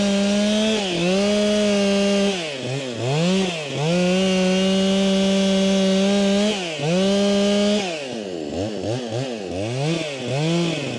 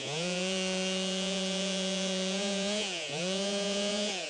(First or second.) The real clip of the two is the first